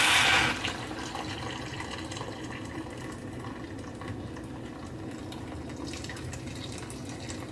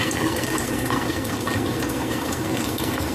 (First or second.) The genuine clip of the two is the first